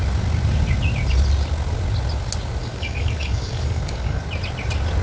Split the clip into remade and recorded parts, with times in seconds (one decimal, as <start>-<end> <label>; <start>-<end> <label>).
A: 0.0-2.6 recorded; 2.6-4.2 remade; 4.2-5.0 recorded